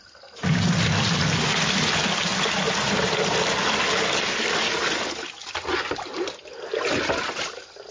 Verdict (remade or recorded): recorded